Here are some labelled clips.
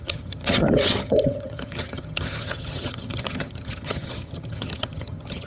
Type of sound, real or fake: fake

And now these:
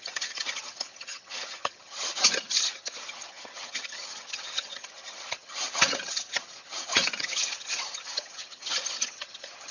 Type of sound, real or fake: fake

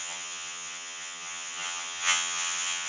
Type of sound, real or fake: fake